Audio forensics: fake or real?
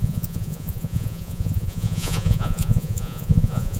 fake